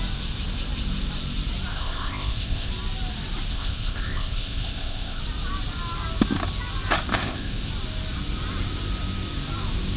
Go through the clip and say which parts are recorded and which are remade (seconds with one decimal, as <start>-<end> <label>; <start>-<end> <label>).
0.0-1.7 recorded; 1.7-2.7 remade; 2.7-3.5 recorded; 3.5-5.2 remade; 5.2-7.1 recorded; 7.1-7.7 remade; 7.7-10.0 recorded

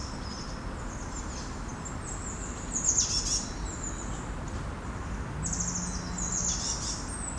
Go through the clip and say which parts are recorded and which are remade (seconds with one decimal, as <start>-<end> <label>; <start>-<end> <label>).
0.0-7.4 recorded

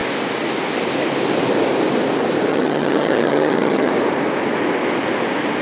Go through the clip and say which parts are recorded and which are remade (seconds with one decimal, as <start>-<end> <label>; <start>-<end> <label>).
0.0-2.5 recorded; 2.5-3.9 remade; 3.9-5.6 recorded

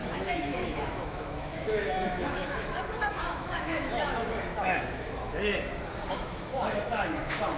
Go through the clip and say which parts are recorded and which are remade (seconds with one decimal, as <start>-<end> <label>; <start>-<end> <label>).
0.0-5.5 remade; 5.5-6.1 recorded; 6.1-7.6 remade